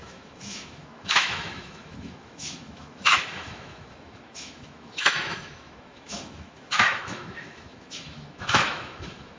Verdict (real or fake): fake